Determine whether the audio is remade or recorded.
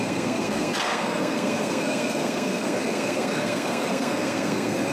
remade